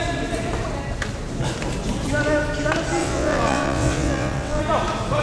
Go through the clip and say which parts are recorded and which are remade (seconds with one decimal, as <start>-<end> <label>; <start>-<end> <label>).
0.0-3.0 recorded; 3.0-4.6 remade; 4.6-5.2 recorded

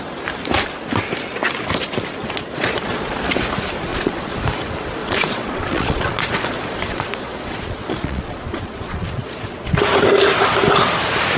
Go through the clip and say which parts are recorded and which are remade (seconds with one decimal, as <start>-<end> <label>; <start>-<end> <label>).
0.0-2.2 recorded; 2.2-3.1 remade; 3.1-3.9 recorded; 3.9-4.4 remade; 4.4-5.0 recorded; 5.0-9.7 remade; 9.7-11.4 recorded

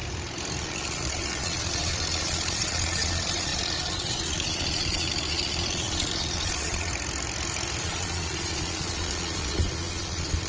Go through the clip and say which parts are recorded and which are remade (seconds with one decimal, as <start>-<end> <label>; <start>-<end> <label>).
0.0-0.6 recorded; 0.6-6.9 remade; 6.9-7.8 recorded; 7.8-10.5 remade

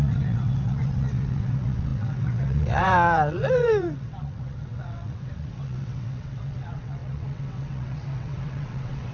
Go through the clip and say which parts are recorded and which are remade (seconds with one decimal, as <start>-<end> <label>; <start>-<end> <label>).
0.0-9.1 remade

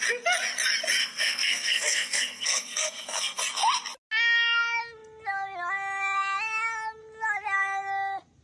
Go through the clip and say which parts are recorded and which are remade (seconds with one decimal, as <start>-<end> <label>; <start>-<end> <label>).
0.0-1.0 recorded; 1.0-3.4 remade; 3.4-8.4 recorded

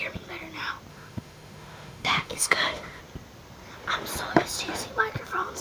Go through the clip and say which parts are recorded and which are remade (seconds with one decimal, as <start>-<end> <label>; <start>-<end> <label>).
0.0-0.9 recorded; 0.9-3.0 remade; 3.0-5.6 recorded